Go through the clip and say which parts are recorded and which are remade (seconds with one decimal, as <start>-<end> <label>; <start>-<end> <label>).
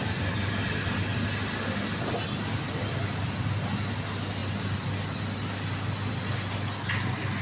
0.0-7.4 recorded